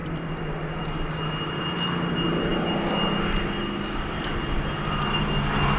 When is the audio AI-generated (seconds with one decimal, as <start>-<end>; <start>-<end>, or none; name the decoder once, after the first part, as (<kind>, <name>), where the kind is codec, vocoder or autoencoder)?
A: none